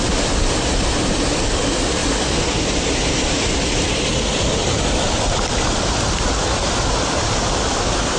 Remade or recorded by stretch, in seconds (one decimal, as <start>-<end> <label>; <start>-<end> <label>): 0.0-8.2 recorded